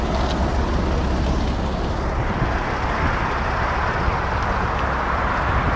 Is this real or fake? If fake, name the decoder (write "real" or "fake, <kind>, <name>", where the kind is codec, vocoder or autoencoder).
real